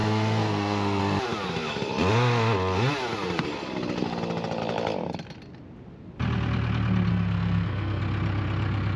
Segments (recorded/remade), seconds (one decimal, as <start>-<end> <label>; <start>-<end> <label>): 0.0-1.0 remade; 1.0-7.1 recorded; 7.1-8.0 remade; 8.0-9.0 recorded